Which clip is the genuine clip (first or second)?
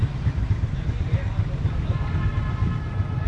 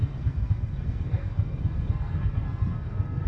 first